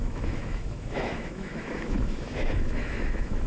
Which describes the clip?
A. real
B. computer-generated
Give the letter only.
B